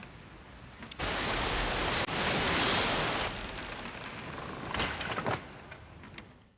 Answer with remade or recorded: recorded